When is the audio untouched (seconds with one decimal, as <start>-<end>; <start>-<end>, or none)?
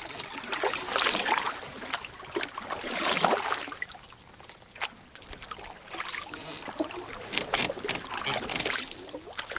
0.0-9.6